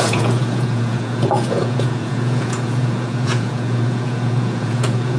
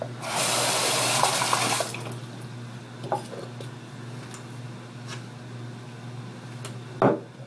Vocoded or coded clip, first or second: first